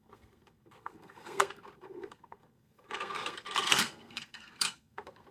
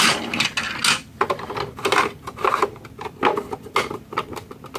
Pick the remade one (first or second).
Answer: first